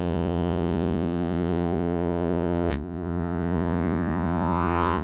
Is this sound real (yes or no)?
no